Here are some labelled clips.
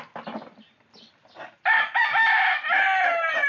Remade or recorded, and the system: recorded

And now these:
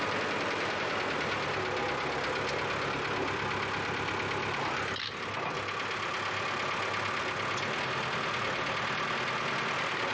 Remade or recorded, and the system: recorded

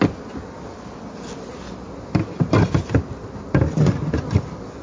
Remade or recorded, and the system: recorded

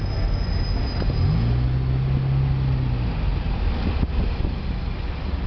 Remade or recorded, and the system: recorded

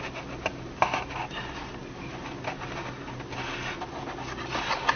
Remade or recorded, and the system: recorded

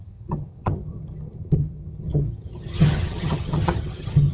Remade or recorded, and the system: remade, vocoder, HiFi-GAN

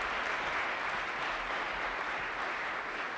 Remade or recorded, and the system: recorded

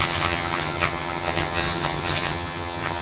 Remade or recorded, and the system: remade, vocoder, HiFi-GAN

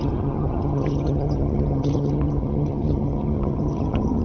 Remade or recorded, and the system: remade, vocoder, HiFi-GAN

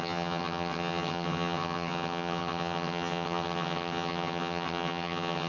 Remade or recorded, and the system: remade, vocoder, HiFi-GAN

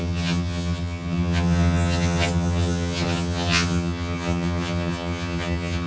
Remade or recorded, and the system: remade, vocoder, HiFi-GAN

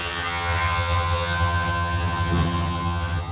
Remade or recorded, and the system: remade, vocoder, HiFi-GAN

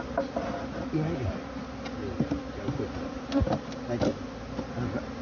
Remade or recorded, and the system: recorded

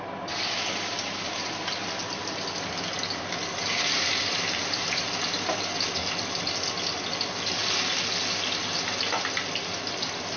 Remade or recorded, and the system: recorded